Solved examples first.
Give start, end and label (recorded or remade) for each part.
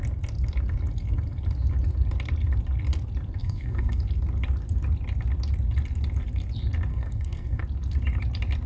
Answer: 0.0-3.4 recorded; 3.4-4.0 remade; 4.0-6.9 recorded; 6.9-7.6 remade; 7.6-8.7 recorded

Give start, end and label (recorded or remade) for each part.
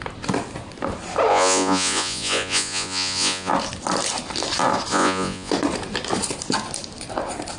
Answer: 0.0-1.3 recorded; 1.3-3.5 remade; 3.5-4.9 recorded; 4.9-5.5 remade; 5.5-7.6 recorded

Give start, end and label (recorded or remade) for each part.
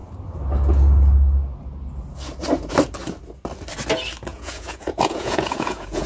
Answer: 0.0-4.3 recorded; 4.3-6.1 remade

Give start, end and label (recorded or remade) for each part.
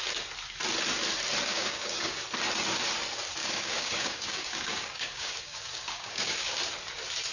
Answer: 0.0-1.5 recorded; 1.5-2.2 remade; 2.2-3.4 recorded; 3.4-6.6 remade; 6.6-7.3 recorded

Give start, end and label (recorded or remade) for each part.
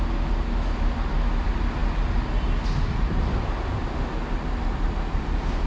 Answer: 0.0-5.7 recorded